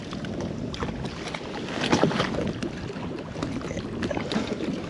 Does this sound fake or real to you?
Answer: real